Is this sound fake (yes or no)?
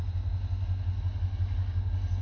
no